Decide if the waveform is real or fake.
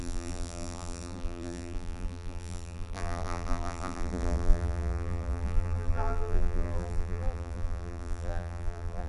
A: fake